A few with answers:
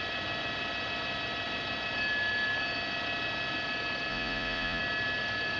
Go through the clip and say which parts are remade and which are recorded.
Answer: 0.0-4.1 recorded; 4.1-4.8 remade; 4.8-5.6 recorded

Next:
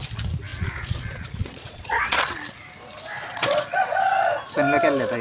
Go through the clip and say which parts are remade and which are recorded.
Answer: 0.0-0.5 recorded; 0.5-2.2 remade; 2.2-3.3 recorded; 3.3-4.0 remade; 4.0-5.2 recorded

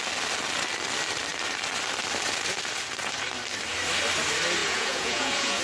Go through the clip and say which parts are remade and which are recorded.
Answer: 0.0-4.6 recorded; 4.6-5.6 remade